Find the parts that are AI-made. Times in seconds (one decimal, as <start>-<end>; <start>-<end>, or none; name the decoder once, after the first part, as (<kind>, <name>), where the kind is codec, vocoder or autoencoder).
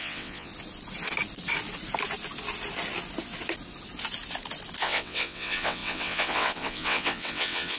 0.0-0.5 (vocoder, WaveNeXt); 4.8-7.8